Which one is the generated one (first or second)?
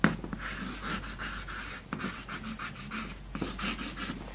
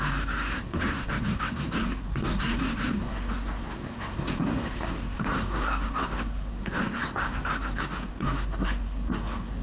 second